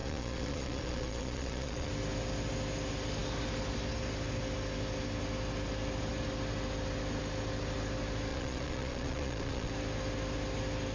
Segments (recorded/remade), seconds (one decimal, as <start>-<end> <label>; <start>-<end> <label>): 0.0-1.9 remade; 1.9-8.3 recorded; 8.3-9.7 remade; 9.7-10.9 recorded

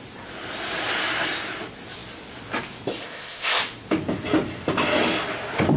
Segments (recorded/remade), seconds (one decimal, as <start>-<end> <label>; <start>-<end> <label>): 0.0-3.0 recorded; 3.0-3.6 remade; 3.6-5.8 recorded